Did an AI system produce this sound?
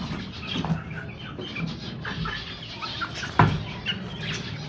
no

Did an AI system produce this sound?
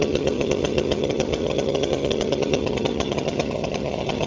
yes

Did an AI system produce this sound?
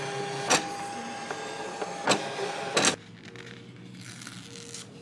no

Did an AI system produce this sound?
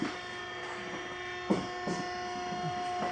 no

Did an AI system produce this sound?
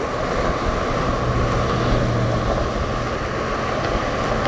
no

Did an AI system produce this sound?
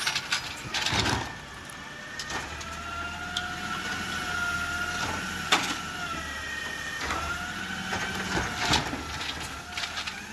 no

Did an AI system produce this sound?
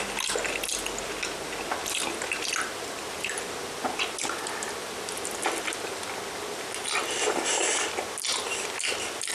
no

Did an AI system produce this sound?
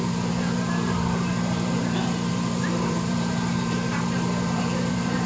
yes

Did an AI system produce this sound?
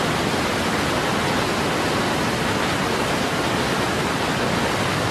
no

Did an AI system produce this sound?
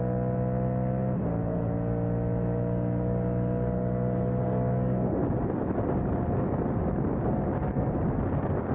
no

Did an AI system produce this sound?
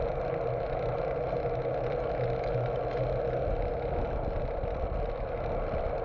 no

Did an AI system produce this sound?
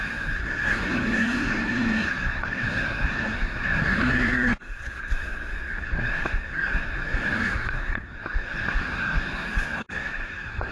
yes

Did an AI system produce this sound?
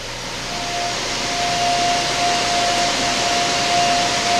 no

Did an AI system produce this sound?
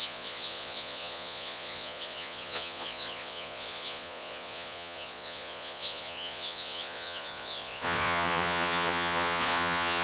yes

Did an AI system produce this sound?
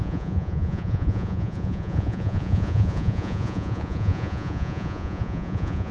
yes